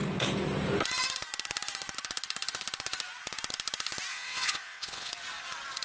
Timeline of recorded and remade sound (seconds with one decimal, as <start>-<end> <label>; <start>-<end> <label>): 0.0-4.1 recorded; 4.1-5.1 remade; 5.1-5.8 recorded